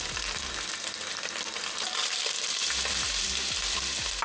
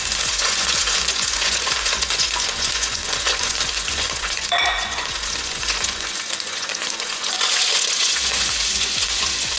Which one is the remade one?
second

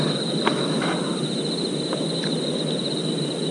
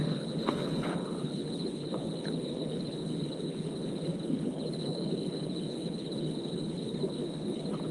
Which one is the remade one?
second